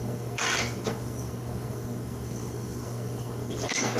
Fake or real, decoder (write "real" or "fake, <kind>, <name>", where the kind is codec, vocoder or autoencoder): fake, codec, SNAC